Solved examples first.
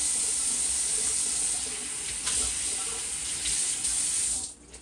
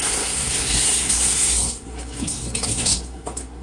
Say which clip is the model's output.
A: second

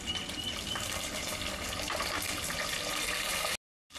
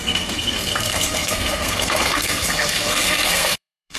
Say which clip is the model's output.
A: second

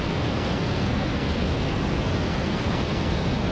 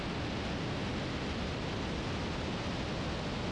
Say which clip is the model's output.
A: first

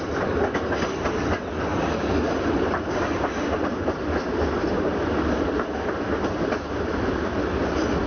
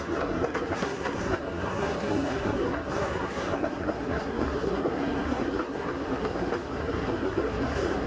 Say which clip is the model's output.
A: second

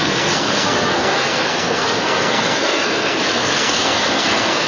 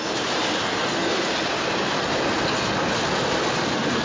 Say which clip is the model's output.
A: first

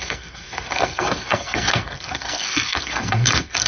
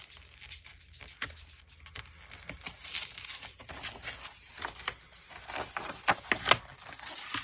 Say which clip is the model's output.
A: first